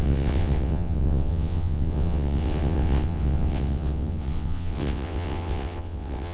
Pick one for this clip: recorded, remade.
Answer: remade